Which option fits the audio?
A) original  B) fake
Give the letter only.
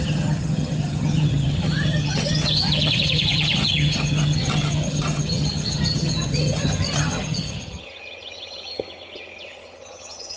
B